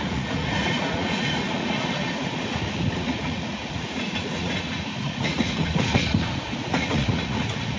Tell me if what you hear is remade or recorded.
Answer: remade